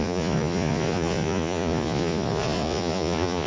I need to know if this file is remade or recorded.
remade